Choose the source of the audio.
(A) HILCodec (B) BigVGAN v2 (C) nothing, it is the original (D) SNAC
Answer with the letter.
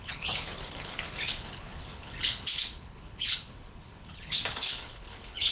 A